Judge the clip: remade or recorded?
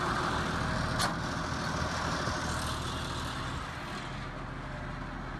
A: recorded